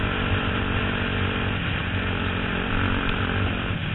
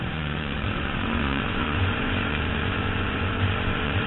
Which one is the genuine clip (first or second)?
first